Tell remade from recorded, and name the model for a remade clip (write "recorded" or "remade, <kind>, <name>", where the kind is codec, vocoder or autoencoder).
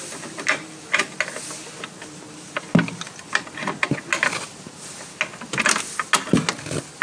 recorded